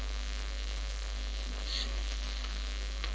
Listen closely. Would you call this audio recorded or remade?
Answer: remade